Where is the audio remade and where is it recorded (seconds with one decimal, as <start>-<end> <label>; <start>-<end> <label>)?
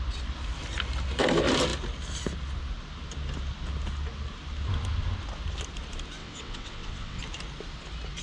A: 0.0-6.2 recorded; 6.2-7.2 remade; 7.2-8.2 recorded